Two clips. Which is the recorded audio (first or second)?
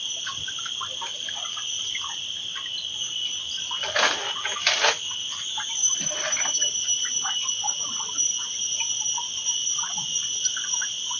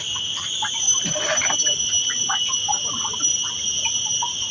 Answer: second